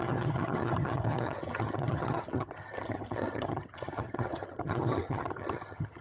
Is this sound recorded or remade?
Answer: remade